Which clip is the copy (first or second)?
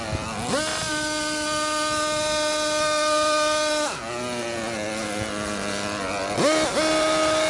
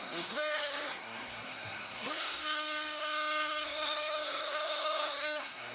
second